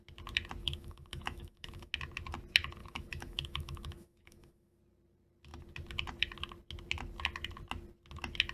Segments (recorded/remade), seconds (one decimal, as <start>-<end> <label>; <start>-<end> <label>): 0.0-0.6 recorded; 0.6-1.9 remade; 1.9-2.8 recorded; 2.8-4.8 remade; 4.8-8.5 recorded